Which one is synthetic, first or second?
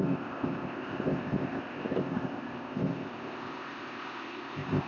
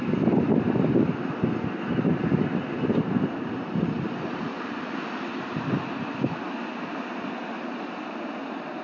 first